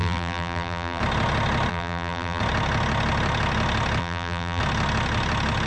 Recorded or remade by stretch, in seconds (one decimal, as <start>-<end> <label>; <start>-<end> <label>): 0.0-1.0 remade; 1.0-1.7 recorded; 1.7-2.4 remade; 2.4-4.0 recorded; 4.0-4.6 remade; 4.6-5.7 recorded